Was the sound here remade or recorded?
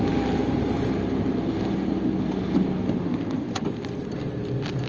recorded